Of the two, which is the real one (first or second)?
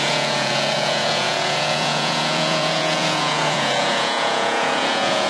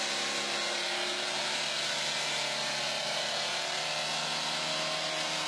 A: second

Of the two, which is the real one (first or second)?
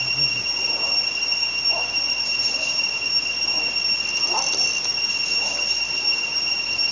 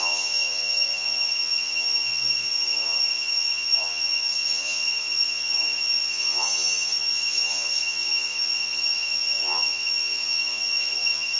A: first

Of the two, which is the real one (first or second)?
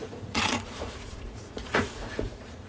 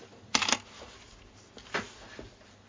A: second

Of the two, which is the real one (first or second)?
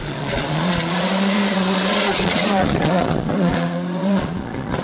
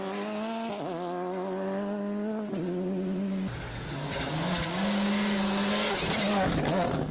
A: second